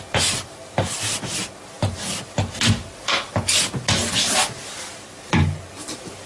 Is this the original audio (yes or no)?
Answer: yes